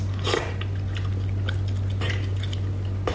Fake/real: real